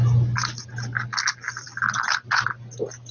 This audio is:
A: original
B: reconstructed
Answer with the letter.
A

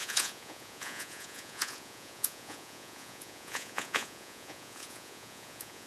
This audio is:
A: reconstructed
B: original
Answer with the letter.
A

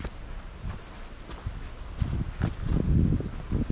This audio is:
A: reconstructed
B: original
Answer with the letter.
B